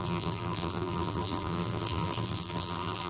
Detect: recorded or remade remade